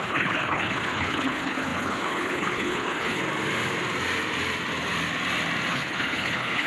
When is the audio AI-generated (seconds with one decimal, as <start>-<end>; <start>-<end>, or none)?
0.0-3.2; 5.7-6.7

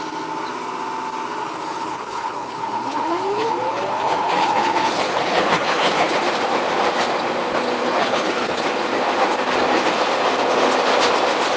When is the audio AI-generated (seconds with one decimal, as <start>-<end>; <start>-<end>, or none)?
1.4-6.2; 7.8-8.6

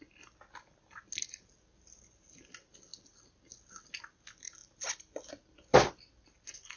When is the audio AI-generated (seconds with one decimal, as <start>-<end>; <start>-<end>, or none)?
none

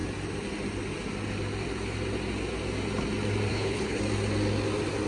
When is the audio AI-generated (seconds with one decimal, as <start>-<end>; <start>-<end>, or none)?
3.5-4.0

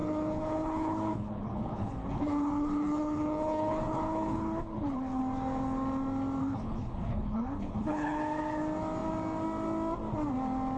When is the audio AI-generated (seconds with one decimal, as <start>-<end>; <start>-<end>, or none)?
0.0-5.2; 6.4-8.2